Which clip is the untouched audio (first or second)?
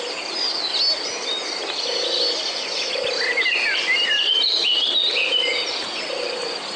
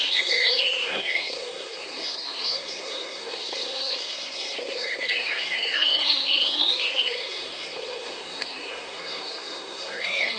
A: first